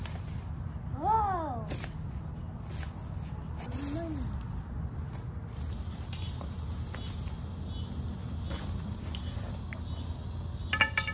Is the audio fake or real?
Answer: real